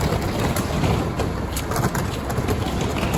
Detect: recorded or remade recorded